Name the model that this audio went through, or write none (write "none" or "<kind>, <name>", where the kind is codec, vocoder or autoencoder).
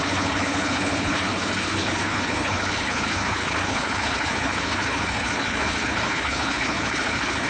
codec, HILCodec